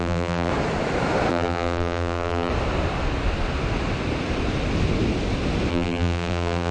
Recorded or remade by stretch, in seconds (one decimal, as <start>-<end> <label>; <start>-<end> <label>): 0.0-0.5 remade; 0.5-1.3 recorded; 1.3-2.5 remade; 2.5-5.7 recorded; 5.7-6.7 remade